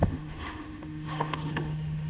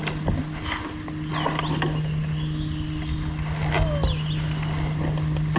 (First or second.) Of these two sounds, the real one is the second